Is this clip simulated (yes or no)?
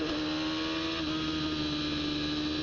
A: no